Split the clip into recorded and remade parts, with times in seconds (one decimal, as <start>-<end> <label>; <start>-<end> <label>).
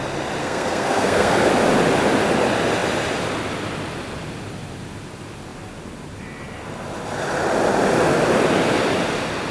0.0-0.4 recorded; 0.4-1.5 remade; 1.5-9.5 recorded